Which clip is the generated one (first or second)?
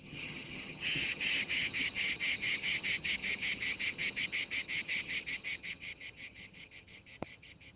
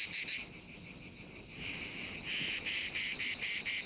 first